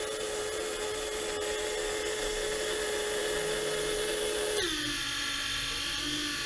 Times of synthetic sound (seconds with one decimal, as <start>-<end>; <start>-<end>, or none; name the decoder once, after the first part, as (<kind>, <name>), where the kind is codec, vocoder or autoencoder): none